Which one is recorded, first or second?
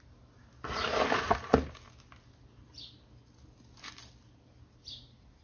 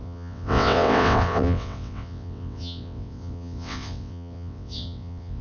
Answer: first